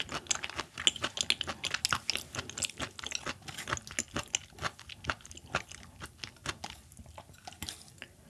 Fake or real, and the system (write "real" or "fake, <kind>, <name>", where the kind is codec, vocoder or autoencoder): real